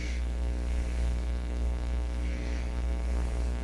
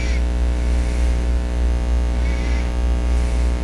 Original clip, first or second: second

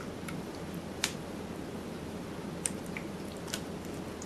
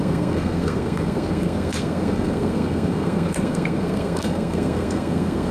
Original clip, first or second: first